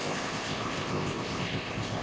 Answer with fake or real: fake